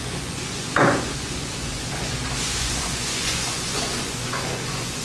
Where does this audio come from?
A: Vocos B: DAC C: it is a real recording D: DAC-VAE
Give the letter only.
A